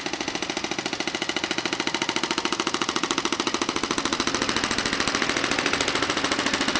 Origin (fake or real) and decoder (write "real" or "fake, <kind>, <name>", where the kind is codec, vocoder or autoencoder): real